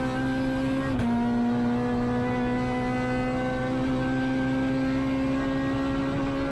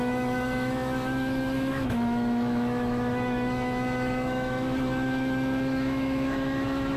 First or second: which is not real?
second